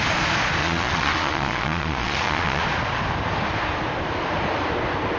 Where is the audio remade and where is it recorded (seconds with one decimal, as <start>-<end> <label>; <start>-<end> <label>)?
0.0-0.6 recorded; 0.6-2.6 remade; 2.6-5.2 recorded